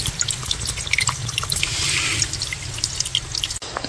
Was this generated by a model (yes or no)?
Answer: no